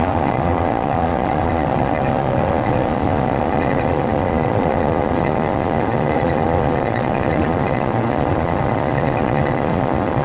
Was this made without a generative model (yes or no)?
no